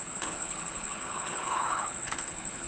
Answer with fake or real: fake